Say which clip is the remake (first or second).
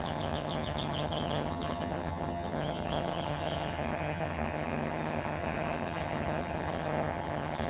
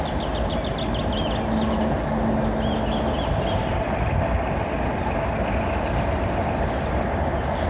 first